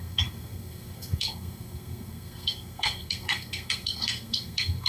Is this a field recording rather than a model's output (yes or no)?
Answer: no